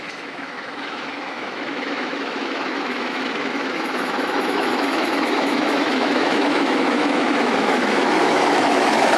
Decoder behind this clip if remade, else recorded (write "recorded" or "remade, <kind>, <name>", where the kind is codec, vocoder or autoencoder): remade, autoencoder, DAC-VAE